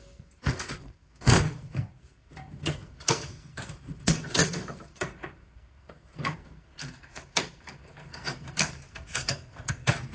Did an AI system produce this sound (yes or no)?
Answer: yes